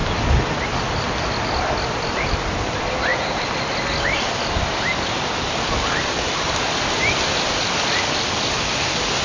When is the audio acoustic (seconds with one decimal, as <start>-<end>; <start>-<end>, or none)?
0.0-1.6; 3.1-4.0